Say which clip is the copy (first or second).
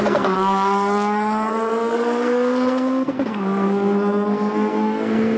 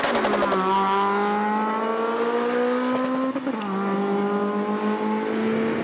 first